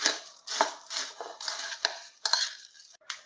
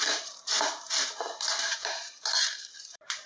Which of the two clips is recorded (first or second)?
first